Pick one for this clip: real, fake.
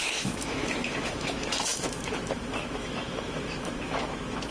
fake